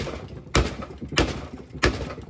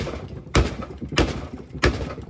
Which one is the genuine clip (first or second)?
first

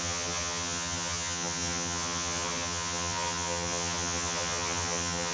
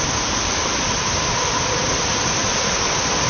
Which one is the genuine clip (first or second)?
second